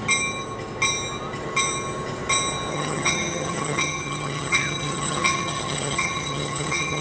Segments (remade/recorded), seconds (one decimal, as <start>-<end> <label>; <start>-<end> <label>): 0.0-2.7 recorded; 2.7-7.0 remade